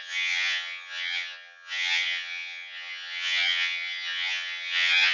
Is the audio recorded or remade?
remade